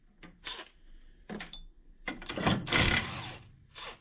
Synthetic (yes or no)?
no